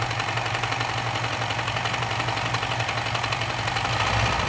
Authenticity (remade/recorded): recorded